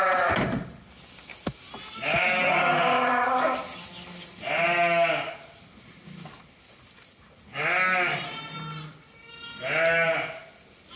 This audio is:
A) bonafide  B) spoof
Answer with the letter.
A